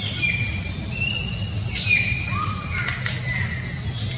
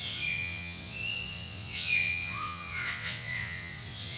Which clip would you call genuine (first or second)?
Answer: first